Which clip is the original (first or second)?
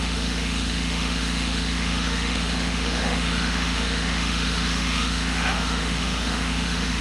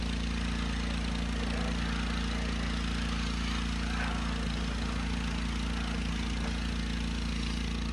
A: second